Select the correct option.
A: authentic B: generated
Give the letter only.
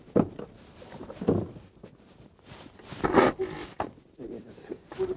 A